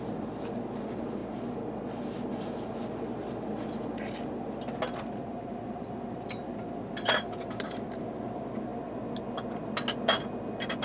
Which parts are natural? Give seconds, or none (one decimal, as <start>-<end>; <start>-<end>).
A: 0.0-10.8